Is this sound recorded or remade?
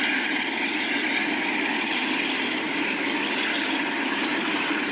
recorded